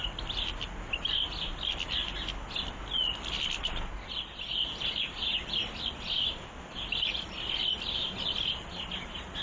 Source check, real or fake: real